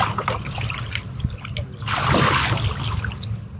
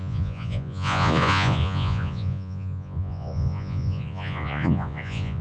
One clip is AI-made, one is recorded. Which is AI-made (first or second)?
second